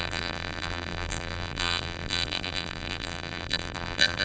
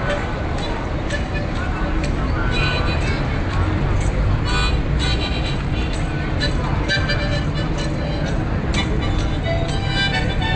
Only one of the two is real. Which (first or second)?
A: second